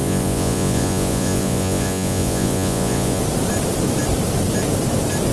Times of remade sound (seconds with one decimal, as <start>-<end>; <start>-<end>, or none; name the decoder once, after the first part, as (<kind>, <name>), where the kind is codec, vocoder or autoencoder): 0.0-3.2 (vocoder, Vocos)